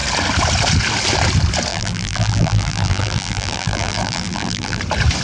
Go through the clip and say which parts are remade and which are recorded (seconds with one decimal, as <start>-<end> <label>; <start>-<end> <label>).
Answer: 0.0-1.7 recorded; 1.7-4.8 remade; 4.8-5.2 recorded